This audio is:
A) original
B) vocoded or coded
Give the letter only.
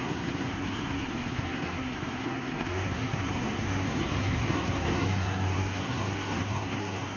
B